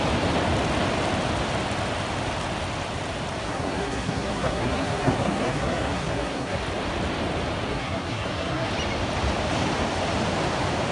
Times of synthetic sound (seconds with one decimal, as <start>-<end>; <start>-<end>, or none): 3.4-6.6; 7.7-8.7